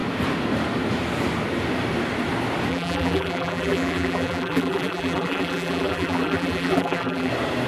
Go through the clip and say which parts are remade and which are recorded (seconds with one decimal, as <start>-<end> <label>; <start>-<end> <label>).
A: 0.0-2.7 recorded; 2.7-7.3 remade; 7.3-7.7 recorded